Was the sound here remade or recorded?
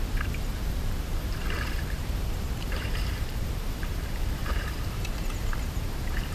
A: remade